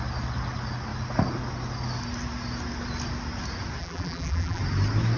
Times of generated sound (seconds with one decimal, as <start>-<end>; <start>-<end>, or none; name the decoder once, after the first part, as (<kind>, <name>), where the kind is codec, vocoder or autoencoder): 3.8-4.6 (vocoder, BigVGAN v2)